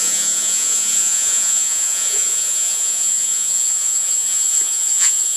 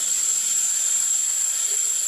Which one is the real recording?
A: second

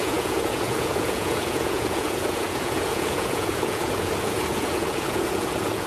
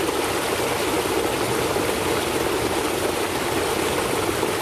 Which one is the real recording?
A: second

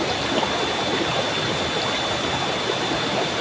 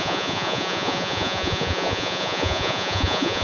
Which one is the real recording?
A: first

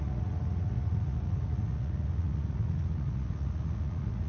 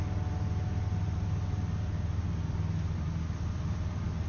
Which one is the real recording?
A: second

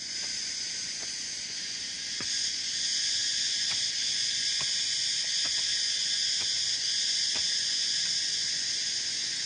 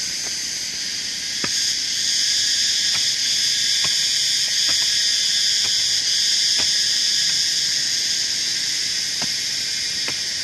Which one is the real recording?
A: second